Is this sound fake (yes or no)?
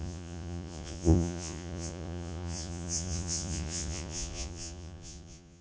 yes